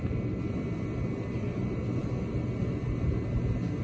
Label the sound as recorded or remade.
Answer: recorded